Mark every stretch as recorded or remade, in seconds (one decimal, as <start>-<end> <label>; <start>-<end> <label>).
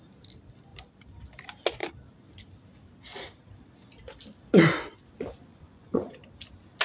0.0-5.5 recorded; 5.5-6.1 remade; 6.1-6.8 recorded